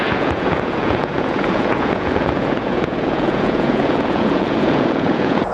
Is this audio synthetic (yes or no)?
yes